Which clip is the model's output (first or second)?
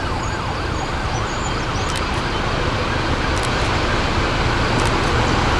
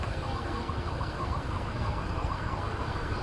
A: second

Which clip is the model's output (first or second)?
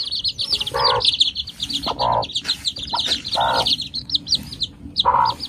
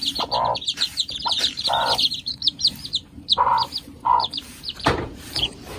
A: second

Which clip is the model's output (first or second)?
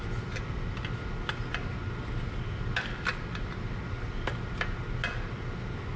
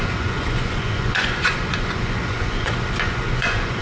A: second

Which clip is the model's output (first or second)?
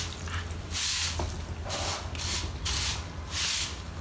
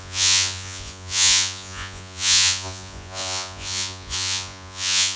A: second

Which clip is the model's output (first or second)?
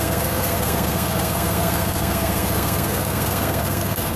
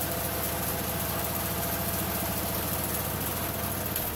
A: first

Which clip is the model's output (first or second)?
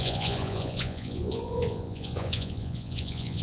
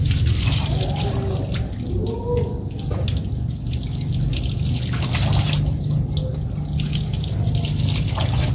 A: first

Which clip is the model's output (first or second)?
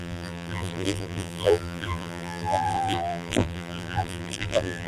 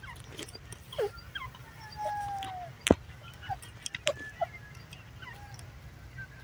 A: first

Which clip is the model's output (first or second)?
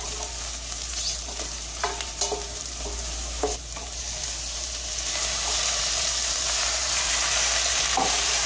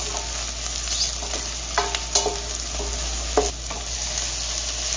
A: first